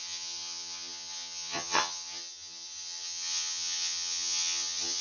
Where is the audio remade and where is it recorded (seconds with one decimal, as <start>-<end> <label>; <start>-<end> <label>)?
0.0-5.0 remade